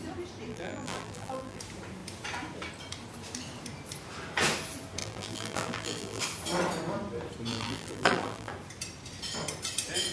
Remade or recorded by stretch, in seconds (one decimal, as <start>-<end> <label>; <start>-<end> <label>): 0.0-0.5 recorded; 0.5-1.6 remade; 1.6-5.0 recorded; 5.0-6.2 remade; 6.2-7.5 recorded; 7.5-8.5 remade; 8.5-10.1 recorded